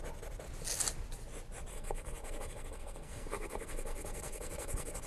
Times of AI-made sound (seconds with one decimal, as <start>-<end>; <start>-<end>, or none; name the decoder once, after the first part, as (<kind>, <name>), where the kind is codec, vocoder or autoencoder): 1.7-5.1 (codec, SNAC)